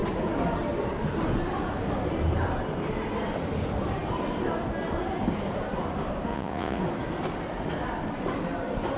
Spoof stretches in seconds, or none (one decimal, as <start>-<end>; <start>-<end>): 6.3-6.8